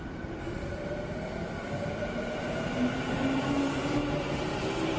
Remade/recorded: remade